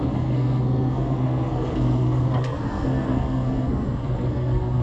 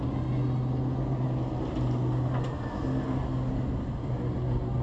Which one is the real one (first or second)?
second